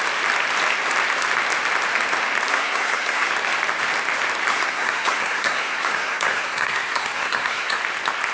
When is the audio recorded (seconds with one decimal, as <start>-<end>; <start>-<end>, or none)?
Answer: 0.0-2.5; 3.3-4.5; 7.8-8.3